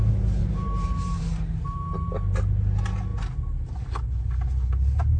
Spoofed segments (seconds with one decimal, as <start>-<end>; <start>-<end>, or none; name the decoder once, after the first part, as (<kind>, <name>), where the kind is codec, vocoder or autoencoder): 0.4-1.2 (vocoder, BigVGAN v2)